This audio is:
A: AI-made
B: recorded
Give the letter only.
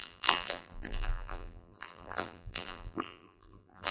A